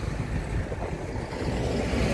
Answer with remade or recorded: recorded